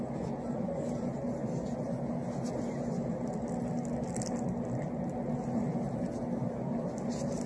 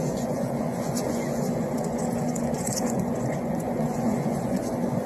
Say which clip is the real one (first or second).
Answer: first